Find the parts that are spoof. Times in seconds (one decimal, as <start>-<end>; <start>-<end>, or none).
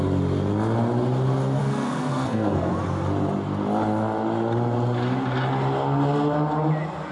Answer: 1.6-2.7